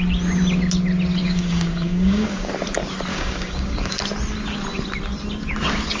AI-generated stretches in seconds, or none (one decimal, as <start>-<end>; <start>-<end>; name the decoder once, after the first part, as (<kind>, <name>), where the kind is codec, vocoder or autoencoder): 1.2-2.5 (codec, DAC); 3.1-3.9